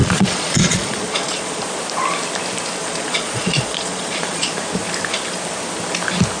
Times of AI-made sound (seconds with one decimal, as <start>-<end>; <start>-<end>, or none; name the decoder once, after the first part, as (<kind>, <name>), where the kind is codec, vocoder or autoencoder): 0.0-1.6 (vocoder, Vocos); 2.8-4.5